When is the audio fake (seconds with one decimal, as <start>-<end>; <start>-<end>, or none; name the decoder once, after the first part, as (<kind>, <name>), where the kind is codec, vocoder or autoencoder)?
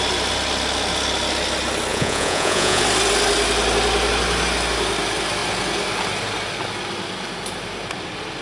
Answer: 1.9-2.8 (vocoder, Vocos)